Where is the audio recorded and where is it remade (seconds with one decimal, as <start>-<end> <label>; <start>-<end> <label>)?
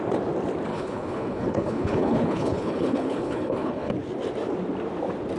0.0-0.7 recorded; 0.7-3.9 remade; 3.9-5.4 recorded